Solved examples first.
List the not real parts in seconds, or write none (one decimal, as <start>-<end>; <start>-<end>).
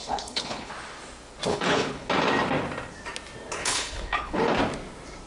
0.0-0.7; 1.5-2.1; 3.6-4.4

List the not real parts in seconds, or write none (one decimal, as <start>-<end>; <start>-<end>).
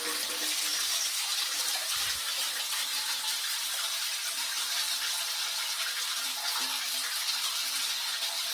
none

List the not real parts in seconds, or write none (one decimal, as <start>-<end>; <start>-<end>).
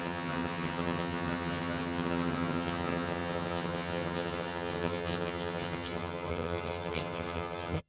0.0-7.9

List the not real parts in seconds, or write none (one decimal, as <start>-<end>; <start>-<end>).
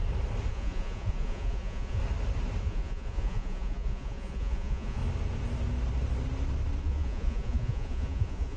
0.5-2.0; 2.6-5.0; 6.8-8.6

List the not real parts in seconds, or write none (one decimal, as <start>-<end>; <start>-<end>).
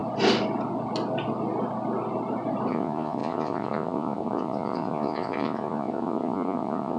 2.7-7.0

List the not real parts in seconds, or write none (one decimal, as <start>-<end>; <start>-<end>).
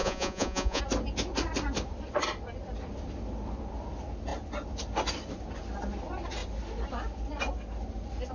0.0-0.8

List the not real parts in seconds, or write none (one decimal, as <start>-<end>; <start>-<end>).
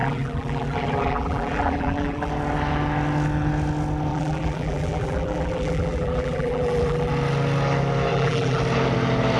0.0-2.3; 4.1-7.1; 8.1-8.6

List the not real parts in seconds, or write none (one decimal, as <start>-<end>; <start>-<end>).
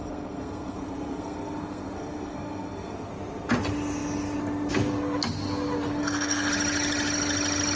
0.0-3.1; 6.0-6.5